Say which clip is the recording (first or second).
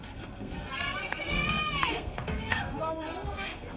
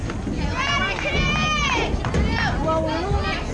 second